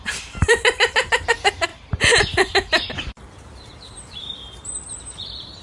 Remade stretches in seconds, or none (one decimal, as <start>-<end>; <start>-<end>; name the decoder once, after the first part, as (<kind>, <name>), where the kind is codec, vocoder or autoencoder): 0.0-1.7 (vocoder, BigVGAN v2); 3.0-5.6